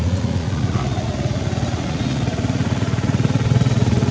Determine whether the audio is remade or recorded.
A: remade